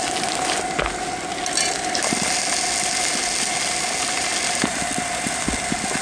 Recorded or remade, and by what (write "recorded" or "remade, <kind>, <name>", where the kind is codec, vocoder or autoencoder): recorded